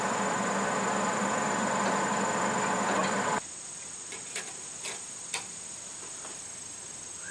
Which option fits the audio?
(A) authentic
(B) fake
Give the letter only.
A